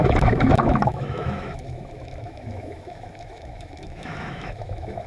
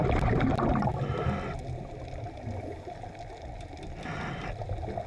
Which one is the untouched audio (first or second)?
second